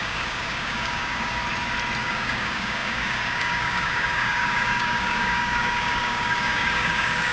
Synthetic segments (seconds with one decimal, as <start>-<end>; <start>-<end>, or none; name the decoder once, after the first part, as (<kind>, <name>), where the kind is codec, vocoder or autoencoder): 0.0-1.4 (codec, DAC); 2.0-7.3